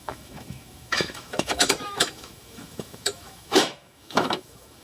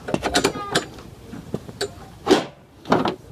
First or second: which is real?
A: second